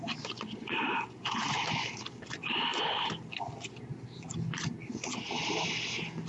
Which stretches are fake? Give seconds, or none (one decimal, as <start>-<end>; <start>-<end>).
none

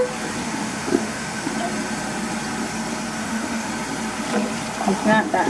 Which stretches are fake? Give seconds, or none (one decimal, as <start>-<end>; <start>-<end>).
0.4-1.5; 3.2-3.7

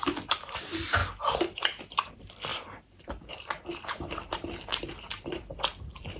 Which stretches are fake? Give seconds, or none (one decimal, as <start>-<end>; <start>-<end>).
0.0-1.0; 1.8-6.2

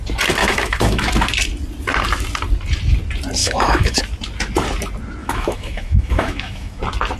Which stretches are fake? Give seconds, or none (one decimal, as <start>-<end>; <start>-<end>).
0.4-1.1; 3.4-4.0; 5.2-6.8

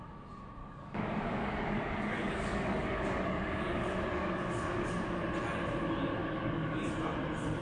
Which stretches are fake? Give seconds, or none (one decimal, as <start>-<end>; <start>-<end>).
0.6-5.2; 6.2-6.9